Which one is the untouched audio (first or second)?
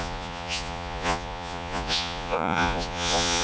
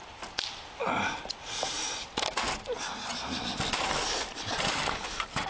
second